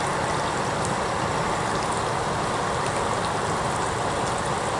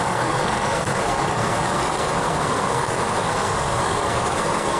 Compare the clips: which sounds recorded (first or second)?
first